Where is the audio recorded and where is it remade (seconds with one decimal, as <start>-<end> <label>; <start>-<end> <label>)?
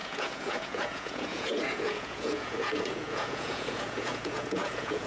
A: 0.0-5.1 remade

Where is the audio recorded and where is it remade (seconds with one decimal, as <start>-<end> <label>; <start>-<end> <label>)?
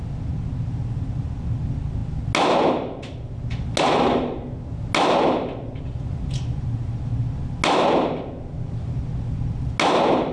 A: 0.0-10.3 recorded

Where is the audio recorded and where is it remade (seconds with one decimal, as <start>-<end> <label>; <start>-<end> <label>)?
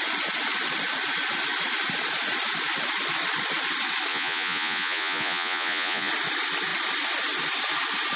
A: 0.0-4.1 recorded; 4.1-6.1 remade; 6.1-8.2 recorded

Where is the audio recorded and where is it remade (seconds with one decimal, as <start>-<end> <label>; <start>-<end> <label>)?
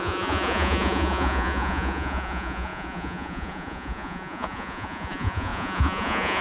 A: 0.0-6.4 remade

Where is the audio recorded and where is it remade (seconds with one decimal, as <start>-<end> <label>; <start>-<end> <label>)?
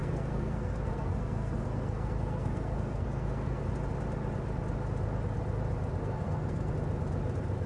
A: 0.0-3.6 remade; 3.6-6.0 recorded; 6.0-6.7 remade; 6.7-7.7 recorded